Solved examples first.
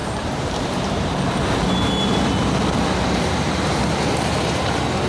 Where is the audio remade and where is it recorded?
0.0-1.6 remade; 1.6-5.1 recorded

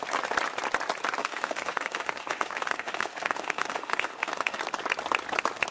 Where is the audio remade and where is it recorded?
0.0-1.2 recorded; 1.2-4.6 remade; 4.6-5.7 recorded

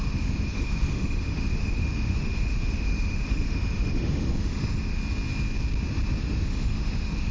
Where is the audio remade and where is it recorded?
0.0-5.0 remade; 5.0-6.2 recorded; 6.2-7.3 remade